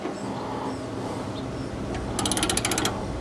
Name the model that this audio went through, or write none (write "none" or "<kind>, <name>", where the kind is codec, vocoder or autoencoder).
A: none